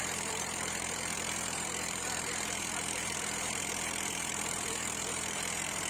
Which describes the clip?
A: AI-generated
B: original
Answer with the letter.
A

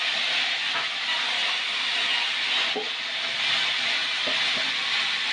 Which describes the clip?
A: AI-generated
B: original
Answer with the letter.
B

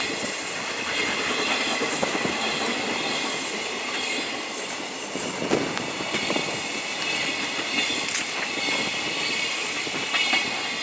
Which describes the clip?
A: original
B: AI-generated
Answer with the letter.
B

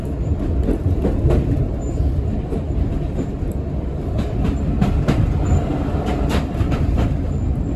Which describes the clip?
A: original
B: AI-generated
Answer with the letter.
B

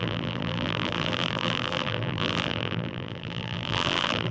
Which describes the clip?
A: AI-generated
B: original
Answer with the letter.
A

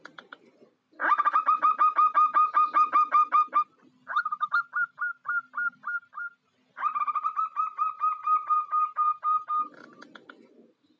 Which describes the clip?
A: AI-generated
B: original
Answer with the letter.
B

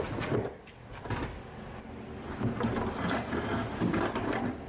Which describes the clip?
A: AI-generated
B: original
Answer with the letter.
B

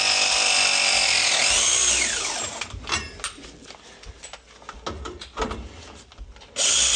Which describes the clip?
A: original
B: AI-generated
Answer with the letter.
A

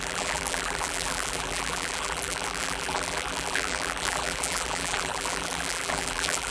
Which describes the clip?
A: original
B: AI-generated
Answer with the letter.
B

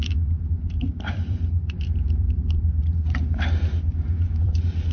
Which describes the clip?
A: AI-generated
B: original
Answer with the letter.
A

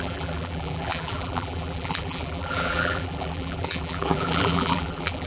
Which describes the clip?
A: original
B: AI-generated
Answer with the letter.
B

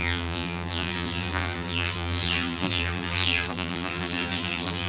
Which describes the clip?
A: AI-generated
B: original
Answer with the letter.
A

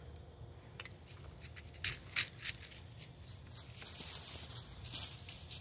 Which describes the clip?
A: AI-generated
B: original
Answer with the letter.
B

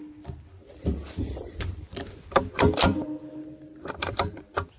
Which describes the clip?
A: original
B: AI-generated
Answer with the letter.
B